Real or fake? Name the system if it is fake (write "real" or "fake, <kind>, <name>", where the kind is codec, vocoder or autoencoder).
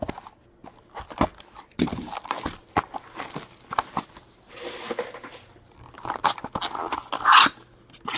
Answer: real